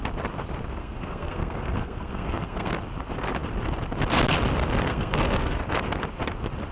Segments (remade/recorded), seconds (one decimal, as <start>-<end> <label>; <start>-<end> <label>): 0.0-0.8 recorded; 0.8-2.7 remade; 2.7-4.9 recorded; 4.9-5.6 remade; 5.6-6.7 recorded